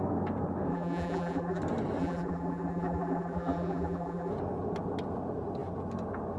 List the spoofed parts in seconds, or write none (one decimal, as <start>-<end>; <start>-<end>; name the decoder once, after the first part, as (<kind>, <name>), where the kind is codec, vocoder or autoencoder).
0.7-1.6 (vocoder, BigVGAN v2); 2.0-4.3